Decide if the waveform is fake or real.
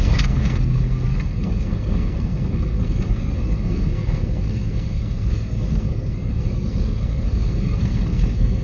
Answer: fake